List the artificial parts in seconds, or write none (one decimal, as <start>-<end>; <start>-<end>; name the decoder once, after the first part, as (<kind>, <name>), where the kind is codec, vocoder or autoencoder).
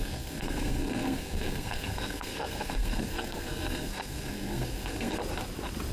0.0-5.2 (codec, SNAC)